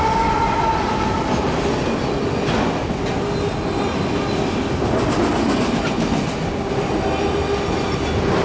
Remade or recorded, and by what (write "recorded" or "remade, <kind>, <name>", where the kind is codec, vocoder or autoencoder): recorded